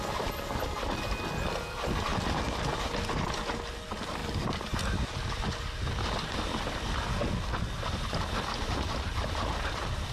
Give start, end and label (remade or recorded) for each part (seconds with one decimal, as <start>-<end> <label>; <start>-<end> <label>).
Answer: 0.0-10.1 recorded